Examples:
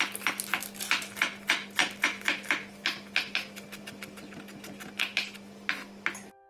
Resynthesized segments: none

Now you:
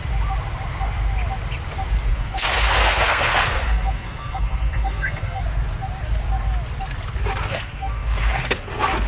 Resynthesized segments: 2.1-5.4; 7.5-8.7

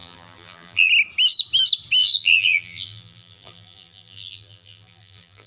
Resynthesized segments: 0.0-0.9; 2.0-5.5

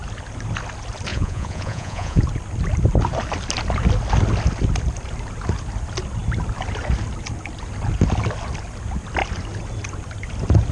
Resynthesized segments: 1.1-2.2

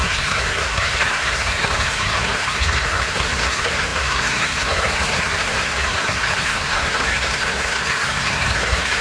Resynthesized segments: 0.0-9.0